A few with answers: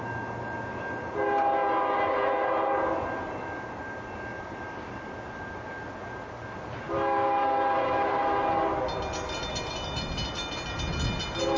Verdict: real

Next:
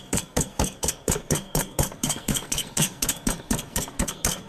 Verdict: fake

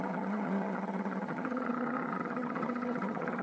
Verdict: fake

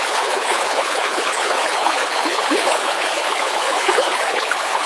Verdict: fake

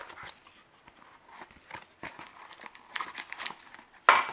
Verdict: real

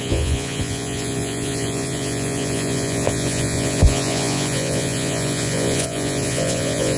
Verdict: fake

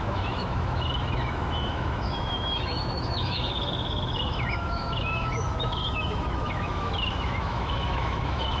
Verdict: fake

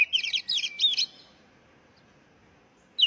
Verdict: real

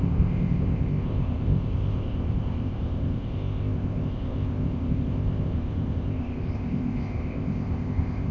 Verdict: fake